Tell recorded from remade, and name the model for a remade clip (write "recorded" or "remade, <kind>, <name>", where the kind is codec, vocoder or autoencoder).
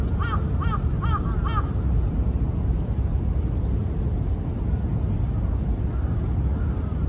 recorded